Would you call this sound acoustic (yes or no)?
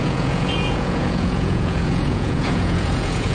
no